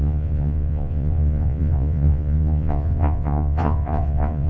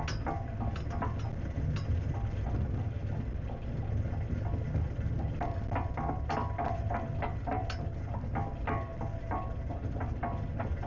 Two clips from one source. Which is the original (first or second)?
second